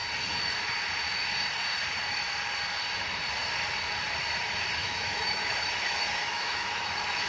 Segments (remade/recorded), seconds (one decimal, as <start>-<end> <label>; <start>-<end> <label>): 0.0-4.8 recorded; 4.8-7.3 remade